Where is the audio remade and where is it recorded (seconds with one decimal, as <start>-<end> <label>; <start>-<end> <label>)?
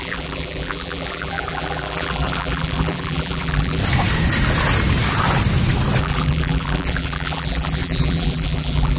0.0-3.8 remade; 3.8-6.0 recorded; 6.0-9.0 remade